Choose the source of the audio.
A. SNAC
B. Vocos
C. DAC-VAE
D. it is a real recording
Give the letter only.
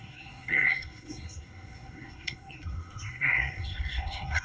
A